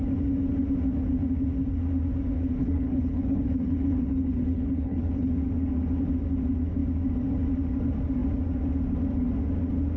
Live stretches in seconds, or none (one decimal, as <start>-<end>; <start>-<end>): 0.0-2.6; 5.3-10.0